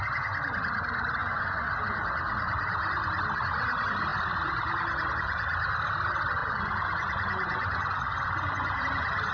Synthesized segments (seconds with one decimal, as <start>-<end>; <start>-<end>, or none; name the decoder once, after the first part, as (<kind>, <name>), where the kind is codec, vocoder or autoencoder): 1.2-1.7 (vocoder, Vocos); 6.4-8.8